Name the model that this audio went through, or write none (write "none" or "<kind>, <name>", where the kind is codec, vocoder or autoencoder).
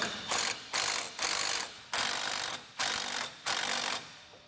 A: none